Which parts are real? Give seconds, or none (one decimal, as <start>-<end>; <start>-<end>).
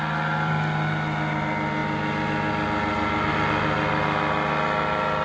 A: 0.0-5.2